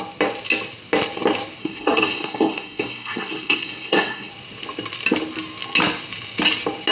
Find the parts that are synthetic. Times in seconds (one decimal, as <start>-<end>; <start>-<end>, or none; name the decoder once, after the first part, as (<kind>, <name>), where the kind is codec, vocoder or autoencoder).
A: 1.6-4.3 (codec, SNAC)